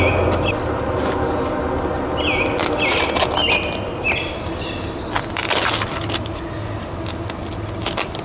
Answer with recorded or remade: recorded